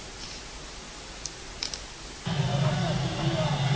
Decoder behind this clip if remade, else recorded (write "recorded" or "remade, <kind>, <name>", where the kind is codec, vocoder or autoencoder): recorded